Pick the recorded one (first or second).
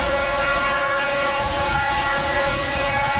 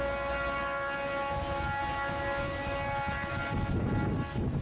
second